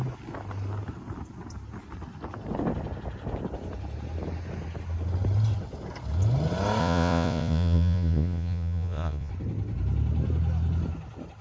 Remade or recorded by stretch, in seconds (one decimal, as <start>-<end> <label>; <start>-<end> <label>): 0.0-6.8 recorded; 6.8-9.3 remade; 9.3-11.4 recorded